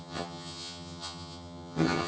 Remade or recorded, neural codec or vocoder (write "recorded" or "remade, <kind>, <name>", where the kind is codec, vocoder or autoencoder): remade, vocoder, HiFi-GAN